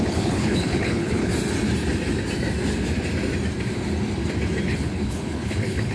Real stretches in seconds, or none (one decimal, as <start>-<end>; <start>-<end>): 1.3-4.6